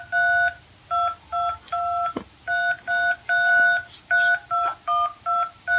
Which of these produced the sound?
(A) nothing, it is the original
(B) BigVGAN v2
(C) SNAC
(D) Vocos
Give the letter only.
A